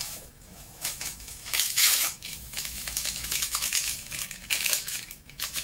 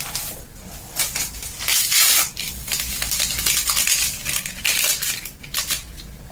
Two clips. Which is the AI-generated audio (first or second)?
first